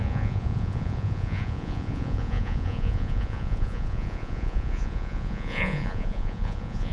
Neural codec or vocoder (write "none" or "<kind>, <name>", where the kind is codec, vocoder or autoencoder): vocoder, Vocos